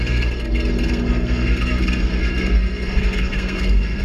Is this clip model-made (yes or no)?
yes